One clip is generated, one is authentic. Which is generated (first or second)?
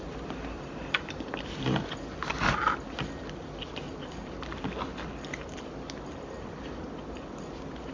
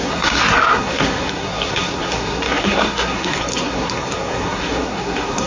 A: second